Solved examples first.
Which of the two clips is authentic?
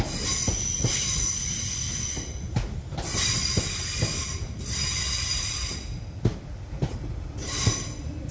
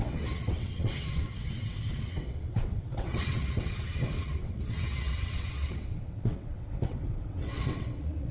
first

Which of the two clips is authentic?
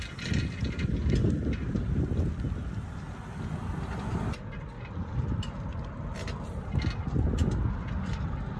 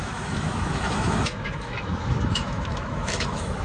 first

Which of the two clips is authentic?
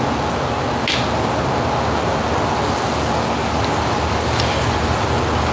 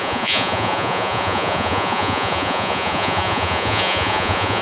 first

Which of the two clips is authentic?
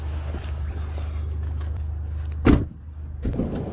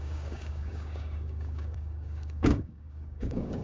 first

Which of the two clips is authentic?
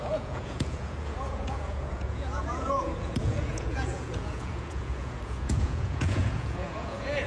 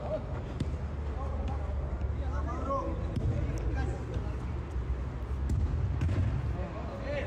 second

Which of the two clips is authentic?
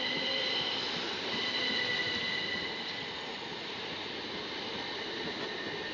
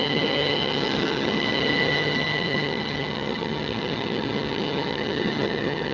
first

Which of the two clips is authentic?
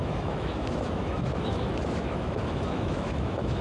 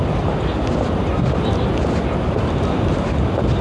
second